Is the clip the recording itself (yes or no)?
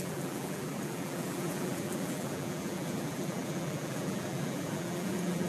no